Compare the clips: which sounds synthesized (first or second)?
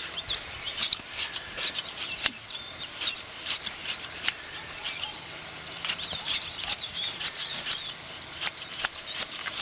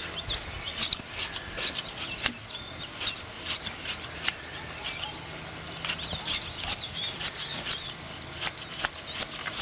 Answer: first